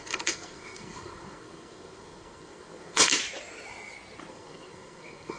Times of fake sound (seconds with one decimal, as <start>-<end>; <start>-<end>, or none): 0.0-3.2; 4.3-5.4